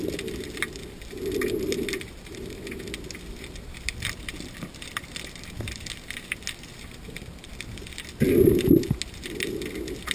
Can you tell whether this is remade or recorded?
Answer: recorded